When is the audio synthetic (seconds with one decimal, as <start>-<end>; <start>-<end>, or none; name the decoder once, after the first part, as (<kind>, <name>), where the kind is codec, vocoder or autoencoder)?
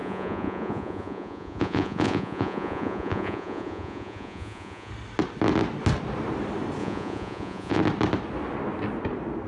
0.0-4.9 (vocoder, Vocos); 6.8-7.8